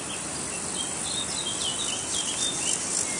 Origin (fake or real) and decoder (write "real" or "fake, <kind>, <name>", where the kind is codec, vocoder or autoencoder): real